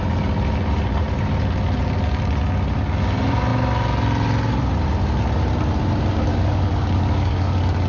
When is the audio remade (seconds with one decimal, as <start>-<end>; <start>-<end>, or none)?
6.3-7.9